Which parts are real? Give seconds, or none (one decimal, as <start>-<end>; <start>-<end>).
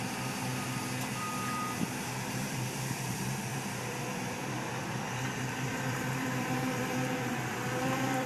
0.5-2.3